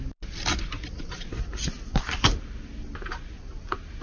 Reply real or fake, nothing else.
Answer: real